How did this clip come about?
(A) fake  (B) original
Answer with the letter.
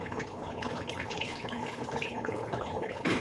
A